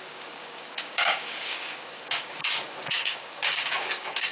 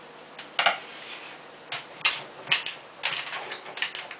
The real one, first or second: second